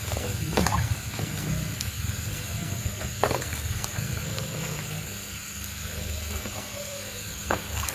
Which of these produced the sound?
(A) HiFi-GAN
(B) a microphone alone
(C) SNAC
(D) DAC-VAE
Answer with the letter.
C